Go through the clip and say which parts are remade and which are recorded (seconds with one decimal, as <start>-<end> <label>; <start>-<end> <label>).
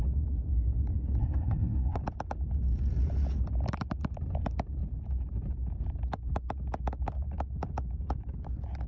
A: 0.0-1.2 recorded; 1.2-2.0 remade; 2.0-8.9 recorded